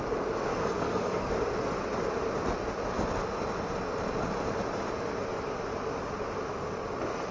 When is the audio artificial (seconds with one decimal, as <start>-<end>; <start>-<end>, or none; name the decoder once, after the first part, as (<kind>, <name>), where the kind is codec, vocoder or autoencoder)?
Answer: 0.5-1.3 (codec, SNAC)